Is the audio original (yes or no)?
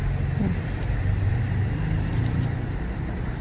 yes